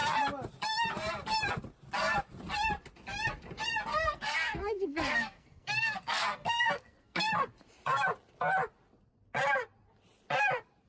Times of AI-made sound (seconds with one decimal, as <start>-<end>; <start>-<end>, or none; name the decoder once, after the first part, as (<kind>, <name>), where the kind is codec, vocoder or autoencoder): 3.9-7.3 (codec, SNAC)

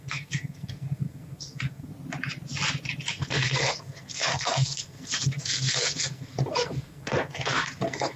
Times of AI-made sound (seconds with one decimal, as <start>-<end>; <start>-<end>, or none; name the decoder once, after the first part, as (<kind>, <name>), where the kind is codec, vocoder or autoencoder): 0.0-1.9 (codec, SNAC); 3.1-8.2

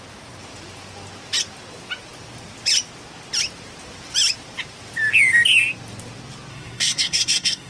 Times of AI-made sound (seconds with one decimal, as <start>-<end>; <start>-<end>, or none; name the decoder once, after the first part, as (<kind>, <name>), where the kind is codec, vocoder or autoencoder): 6.5-7.7 (codec, SNAC)